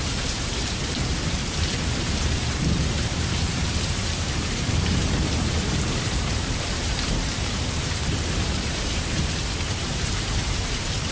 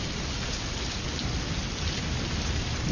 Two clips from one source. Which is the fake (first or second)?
first